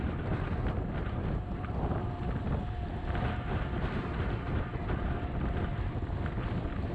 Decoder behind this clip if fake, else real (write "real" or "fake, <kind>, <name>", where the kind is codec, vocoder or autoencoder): real